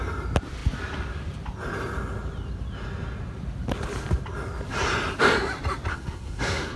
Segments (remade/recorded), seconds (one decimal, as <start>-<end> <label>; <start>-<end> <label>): 0.0-5.9 recorded; 5.9-6.8 remade